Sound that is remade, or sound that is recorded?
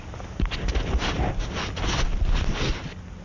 recorded